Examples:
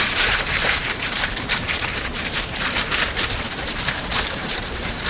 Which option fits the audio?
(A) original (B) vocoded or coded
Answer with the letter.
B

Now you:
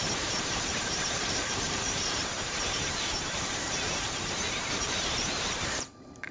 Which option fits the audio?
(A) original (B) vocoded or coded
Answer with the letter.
B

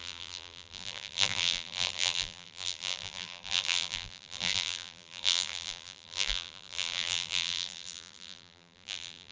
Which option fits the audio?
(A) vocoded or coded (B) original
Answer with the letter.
A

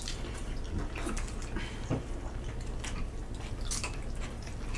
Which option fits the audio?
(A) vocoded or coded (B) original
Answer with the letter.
B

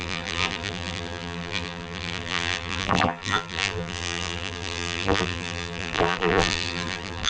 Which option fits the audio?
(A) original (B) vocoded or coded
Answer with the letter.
B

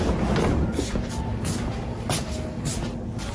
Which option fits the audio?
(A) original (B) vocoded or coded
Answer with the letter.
A